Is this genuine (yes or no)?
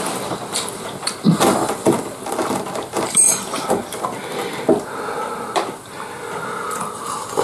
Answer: no